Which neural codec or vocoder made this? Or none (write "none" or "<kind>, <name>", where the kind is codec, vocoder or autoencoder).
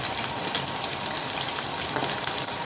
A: none